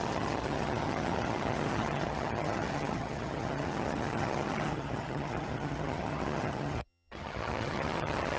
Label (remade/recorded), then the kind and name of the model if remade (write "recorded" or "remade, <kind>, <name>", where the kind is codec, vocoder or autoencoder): remade, vocoder, HiFi-GAN